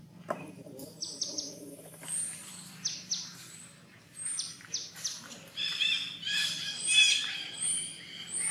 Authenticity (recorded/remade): remade